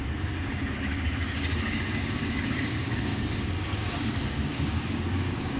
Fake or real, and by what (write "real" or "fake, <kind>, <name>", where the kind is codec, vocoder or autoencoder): fake, codec, DAC